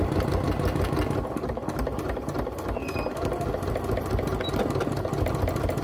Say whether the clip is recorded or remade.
recorded